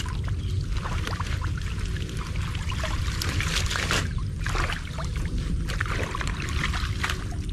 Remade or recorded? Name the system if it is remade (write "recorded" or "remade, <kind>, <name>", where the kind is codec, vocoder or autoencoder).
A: recorded